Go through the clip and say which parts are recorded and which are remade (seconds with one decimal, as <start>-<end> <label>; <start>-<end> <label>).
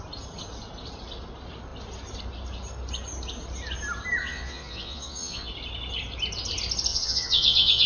0.0-4.2 recorded; 4.2-5.5 remade; 5.5-6.9 recorded; 6.9-7.9 remade